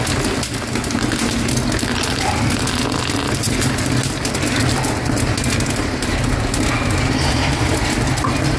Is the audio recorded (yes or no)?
yes